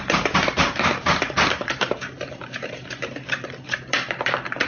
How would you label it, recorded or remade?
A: remade